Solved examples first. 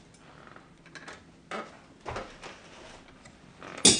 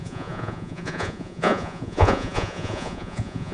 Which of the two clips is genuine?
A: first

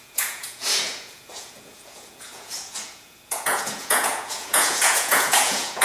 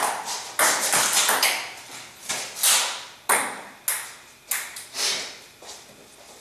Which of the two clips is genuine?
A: second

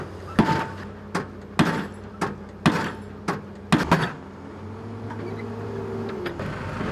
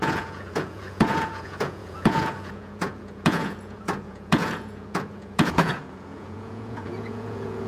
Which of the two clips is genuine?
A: first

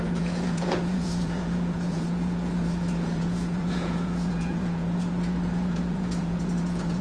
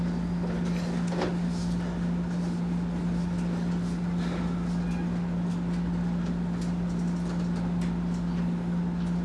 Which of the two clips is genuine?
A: second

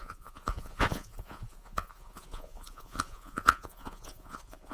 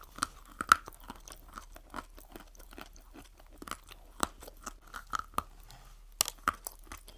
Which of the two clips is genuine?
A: second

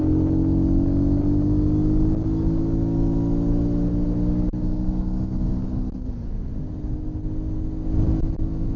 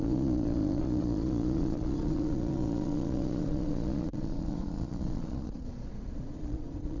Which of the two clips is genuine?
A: first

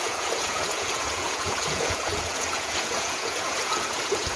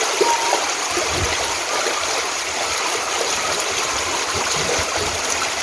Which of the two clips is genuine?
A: second